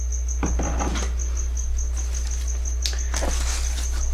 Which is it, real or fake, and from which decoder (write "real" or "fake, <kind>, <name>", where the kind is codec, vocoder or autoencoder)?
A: real